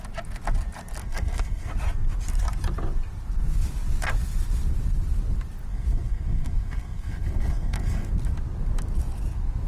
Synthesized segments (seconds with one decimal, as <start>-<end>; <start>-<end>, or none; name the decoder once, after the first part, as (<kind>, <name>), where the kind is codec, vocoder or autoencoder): 1.0-1.7 (codec, SNAC); 5.7-8.1